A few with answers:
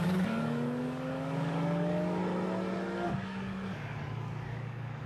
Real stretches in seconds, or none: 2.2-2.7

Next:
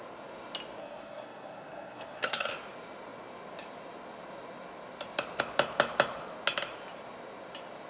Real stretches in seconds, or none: 0.0-0.8; 2.5-7.9

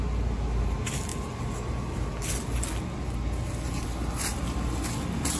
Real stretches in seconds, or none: 0.0-5.4

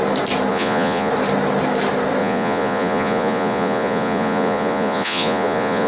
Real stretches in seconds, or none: 0.0-0.5; 1.1-2.2